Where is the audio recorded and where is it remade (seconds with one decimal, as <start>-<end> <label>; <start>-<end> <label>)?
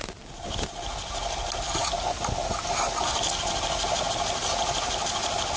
0.0-5.6 recorded